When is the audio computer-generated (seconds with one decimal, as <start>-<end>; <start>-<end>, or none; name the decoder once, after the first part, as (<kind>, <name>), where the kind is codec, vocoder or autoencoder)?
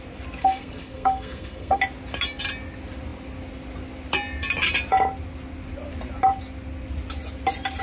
0.4-1.8 (codec, SNAC)